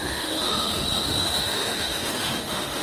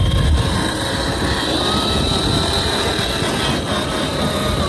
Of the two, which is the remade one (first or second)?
first